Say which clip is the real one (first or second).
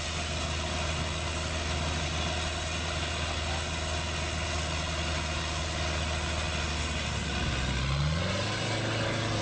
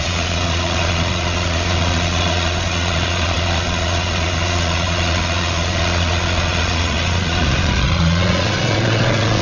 first